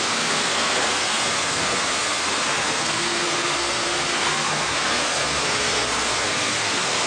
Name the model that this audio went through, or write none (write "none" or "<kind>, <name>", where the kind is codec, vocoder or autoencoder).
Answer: codec, SNAC